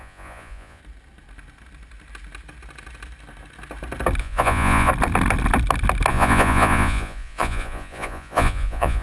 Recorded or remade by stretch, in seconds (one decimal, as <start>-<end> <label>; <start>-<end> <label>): 0.0-0.8 remade; 0.8-4.2 recorded; 4.2-4.9 remade; 4.9-6.1 recorded; 6.1-9.0 remade